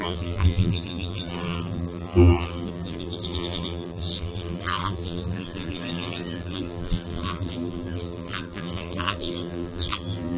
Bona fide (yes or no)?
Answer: no